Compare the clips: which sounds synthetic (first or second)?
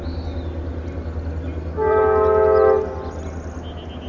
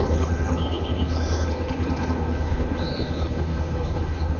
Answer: second